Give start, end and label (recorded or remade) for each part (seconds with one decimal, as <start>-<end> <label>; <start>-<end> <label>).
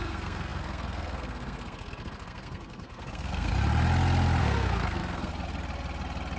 0.0-3.5 remade; 3.5-4.4 recorded; 4.4-5.3 remade; 5.3-6.4 recorded